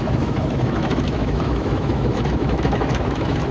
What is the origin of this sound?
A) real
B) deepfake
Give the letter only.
B